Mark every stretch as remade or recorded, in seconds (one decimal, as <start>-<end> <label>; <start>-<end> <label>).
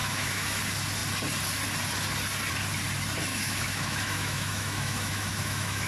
0.0-0.6 remade; 0.6-3.3 recorded; 3.3-5.9 remade